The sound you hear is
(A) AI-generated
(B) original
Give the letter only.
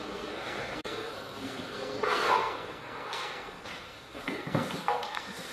A